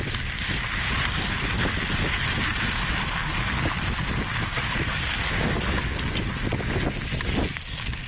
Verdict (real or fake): real